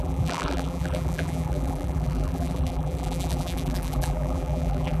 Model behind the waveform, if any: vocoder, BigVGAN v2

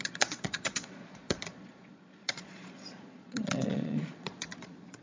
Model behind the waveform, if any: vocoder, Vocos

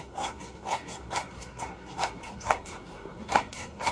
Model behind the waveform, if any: codec, SNAC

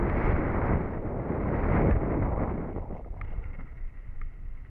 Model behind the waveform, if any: none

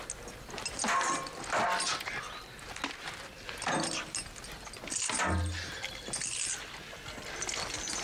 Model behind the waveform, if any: none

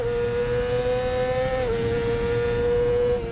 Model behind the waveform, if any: none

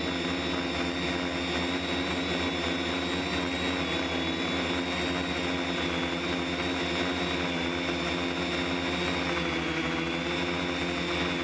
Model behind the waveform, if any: none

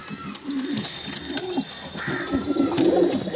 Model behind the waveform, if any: none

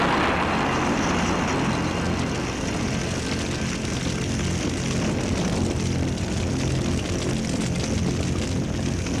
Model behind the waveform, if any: none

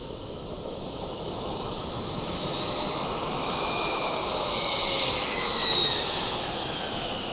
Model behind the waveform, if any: autoencoder, DAC-VAE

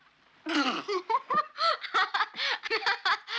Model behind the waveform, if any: none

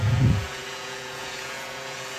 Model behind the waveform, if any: vocoder, Vocos